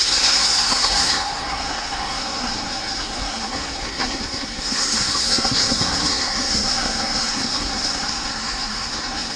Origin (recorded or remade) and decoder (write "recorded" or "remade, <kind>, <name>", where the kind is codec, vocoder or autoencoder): remade, codec, SNAC